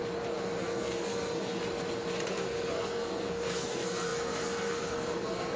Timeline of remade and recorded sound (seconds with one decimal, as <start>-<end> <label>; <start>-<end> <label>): 0.0-0.6 recorded; 0.6-1.6 remade; 1.6-2.3 recorded; 2.3-5.6 remade